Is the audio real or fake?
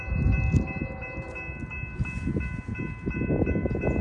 real